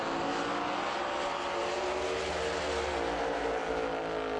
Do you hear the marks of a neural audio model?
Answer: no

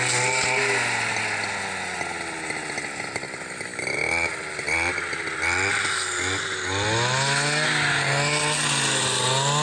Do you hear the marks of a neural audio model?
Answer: no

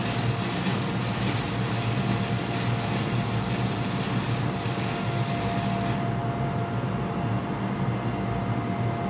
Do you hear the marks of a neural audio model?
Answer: no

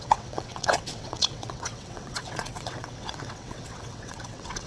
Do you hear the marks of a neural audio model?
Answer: yes